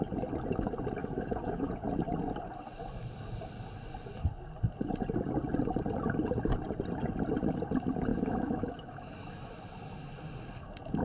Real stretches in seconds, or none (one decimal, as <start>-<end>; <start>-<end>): 0.0-1.0; 1.7-8.1; 9.5-11.0

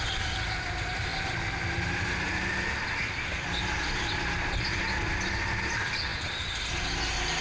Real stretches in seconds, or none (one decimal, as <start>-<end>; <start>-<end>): 0.0-7.4

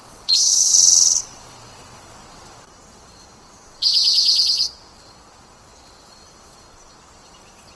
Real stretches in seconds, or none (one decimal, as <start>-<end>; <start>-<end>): 0.5-1.2

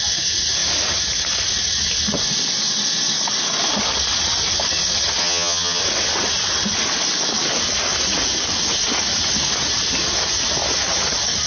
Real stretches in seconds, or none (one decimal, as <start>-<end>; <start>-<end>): 0.0-5.2; 5.8-11.5

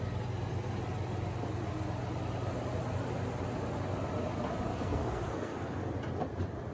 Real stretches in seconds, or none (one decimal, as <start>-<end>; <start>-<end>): 0.0-4.7; 5.5-6.7

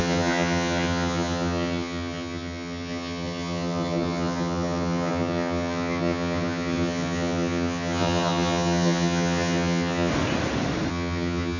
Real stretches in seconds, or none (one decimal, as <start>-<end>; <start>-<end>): 10.1-10.9

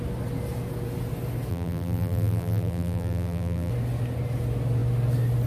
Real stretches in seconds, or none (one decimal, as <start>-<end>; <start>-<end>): 0.0-1.5; 3.7-5.5

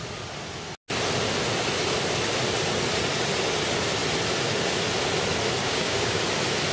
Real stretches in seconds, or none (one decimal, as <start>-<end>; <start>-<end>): 0.0-5.6; 6.2-6.7